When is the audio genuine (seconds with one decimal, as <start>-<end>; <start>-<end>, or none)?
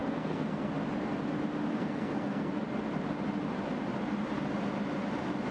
0.7-1.7; 2.5-5.5